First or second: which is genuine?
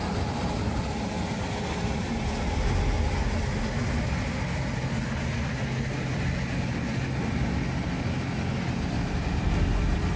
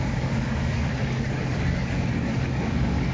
first